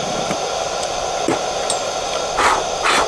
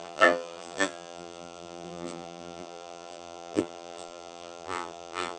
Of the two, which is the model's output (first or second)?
second